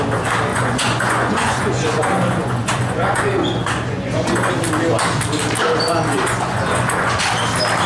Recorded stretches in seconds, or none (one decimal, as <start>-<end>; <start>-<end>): 0.0-0.5; 4.5-6.1; 7.2-7.9